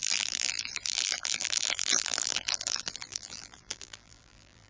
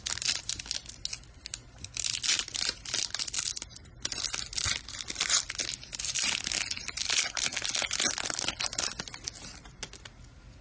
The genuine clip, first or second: second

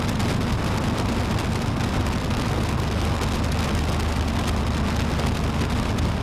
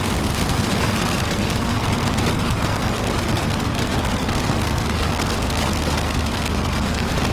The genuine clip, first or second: first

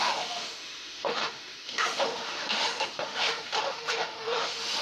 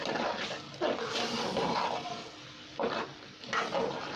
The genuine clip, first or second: second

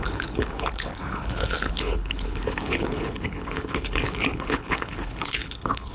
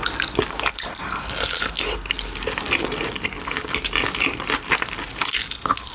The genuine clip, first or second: second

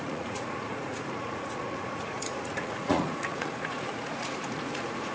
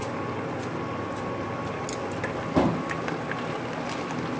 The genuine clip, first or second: second